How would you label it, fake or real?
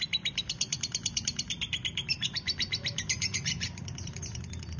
fake